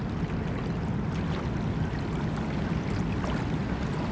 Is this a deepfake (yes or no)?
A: no